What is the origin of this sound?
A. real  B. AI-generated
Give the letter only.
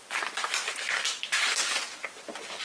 A